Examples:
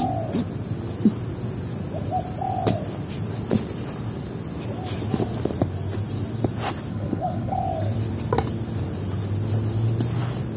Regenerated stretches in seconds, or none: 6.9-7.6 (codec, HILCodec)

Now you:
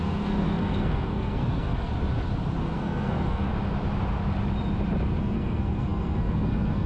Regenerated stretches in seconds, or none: 0.0-1.9 (codec, SNAC); 2.6-3.5; 5.2-6.9

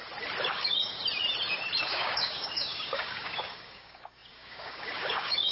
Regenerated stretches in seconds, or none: 0.5-1.0 (codec, DAC); 1.8-5.5

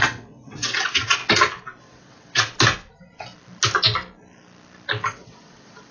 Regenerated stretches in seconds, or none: 0.0-1.2 (vocoder, WaveNeXt); 1.8-2.5; 5.1-5.9

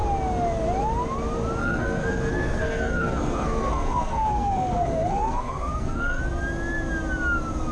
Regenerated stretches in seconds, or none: 1.6-6.2 (codec, SNAC)

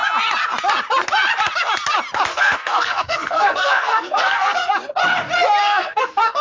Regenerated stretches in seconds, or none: 2.3-4.7 (codec, SNAC); 5.6-6.4

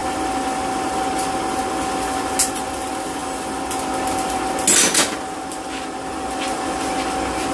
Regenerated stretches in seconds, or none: none